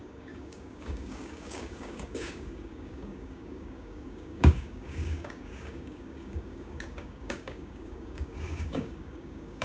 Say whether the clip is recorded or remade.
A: remade